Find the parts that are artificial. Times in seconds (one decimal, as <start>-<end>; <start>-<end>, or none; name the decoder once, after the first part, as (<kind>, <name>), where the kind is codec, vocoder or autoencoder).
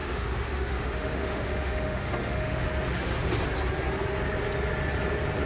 0.0-2.7 (autoencoder, DAC-VAE)